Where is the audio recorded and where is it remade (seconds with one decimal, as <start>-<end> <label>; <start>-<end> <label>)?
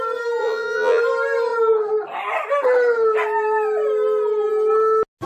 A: 0.0-0.4 recorded; 0.4-1.0 remade; 1.0-5.3 recorded